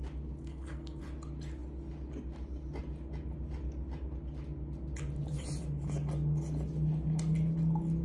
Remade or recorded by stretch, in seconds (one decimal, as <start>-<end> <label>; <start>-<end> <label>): 0.0-0.4 recorded; 0.4-1.0 remade; 1.0-8.0 recorded